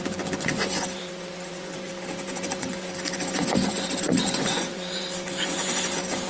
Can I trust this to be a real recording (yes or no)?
no